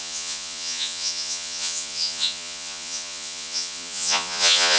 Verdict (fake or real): fake